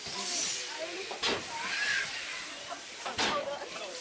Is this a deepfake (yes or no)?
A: yes